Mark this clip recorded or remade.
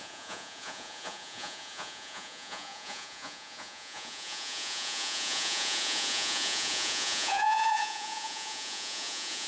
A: remade